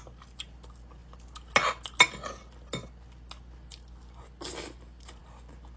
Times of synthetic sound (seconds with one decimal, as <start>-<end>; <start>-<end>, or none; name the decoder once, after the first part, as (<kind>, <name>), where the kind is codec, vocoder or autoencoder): none